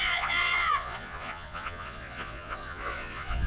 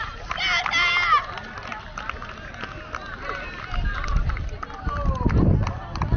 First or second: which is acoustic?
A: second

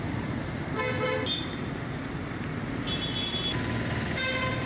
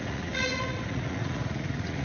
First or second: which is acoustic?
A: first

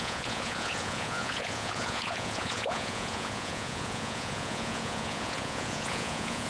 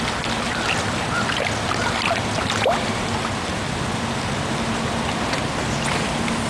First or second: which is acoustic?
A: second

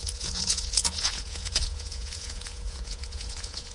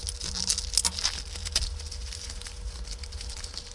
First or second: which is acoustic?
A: second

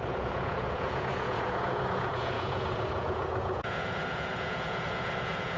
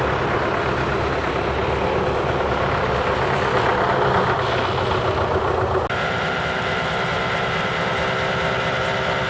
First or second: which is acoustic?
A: second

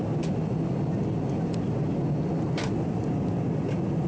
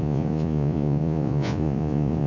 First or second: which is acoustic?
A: first